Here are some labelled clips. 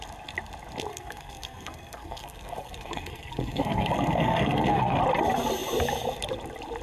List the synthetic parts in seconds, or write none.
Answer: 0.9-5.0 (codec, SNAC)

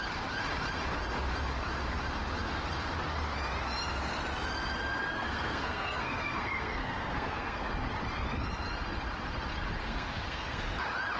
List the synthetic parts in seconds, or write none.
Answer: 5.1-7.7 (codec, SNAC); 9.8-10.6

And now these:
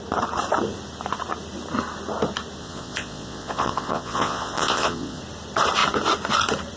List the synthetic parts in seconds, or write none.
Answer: 2.6-5.2 (vocoder, Vocos)